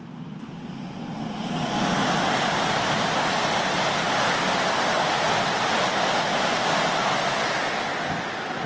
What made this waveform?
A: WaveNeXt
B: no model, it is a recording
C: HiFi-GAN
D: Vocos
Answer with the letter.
B